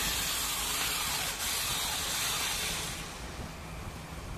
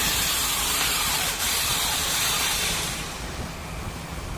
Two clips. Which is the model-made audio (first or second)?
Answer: second